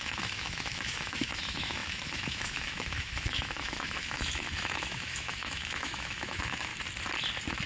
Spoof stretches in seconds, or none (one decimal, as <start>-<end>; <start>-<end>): 0.0-6.7